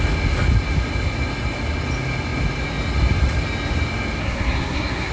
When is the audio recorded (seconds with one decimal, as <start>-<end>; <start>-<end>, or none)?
0.0-4.2